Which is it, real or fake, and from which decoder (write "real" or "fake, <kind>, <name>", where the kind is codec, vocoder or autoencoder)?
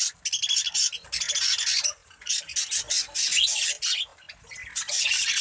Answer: real